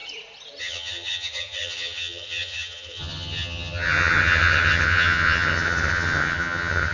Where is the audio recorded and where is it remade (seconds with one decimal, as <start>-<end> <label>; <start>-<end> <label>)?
0.0-0.6 recorded; 0.6-6.9 remade